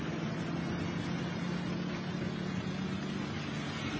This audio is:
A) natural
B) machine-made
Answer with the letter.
A